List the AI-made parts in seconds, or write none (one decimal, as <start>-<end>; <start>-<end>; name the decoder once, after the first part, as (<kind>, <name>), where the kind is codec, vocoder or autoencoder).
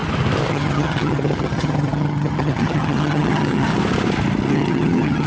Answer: 0.5-3.7 (vocoder, HiFi-GAN); 4.5-5.3